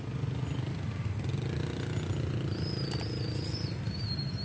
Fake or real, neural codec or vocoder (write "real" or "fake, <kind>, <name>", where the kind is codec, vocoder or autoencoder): real